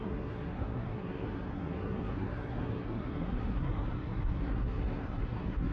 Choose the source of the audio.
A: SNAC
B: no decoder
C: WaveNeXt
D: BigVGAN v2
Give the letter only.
A